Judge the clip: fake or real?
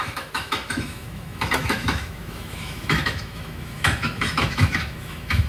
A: fake